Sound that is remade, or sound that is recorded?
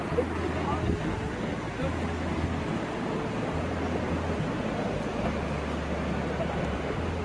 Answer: recorded